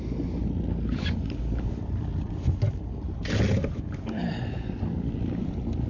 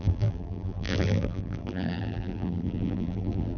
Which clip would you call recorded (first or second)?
first